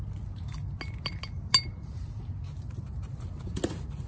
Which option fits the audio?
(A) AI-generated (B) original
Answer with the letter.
B